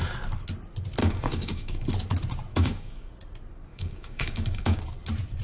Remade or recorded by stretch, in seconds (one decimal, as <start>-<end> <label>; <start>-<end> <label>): 0.0-1.0 recorded; 1.0-1.9 remade; 1.9-2.5 recorded; 2.5-3.1 remade; 3.1-3.7 recorded; 3.7-4.8 remade; 4.8-5.4 recorded